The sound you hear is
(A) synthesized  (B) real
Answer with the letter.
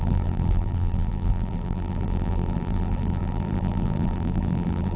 A